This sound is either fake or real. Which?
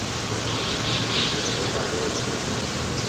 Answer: real